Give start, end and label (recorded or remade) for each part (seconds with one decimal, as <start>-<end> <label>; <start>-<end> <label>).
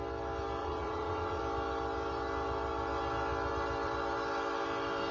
0.0-0.6 recorded; 0.6-1.4 remade; 1.4-5.1 recorded